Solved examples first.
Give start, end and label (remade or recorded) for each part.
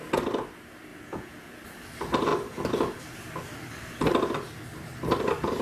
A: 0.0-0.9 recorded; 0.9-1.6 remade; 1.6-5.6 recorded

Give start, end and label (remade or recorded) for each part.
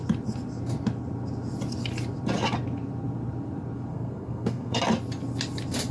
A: 0.0-3.9 recorded; 3.9-4.8 remade; 4.8-5.9 recorded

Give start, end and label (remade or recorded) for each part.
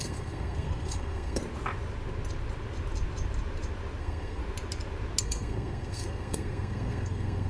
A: 0.0-1.4 remade; 1.4-4.0 recorded; 4.0-4.4 remade; 4.4-5.2 recorded; 5.2-7.5 remade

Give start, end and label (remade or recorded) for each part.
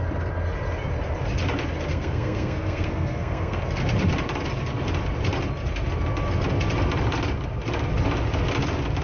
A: 0.0-1.9 recorded; 1.9-3.6 remade; 3.6-9.0 recorded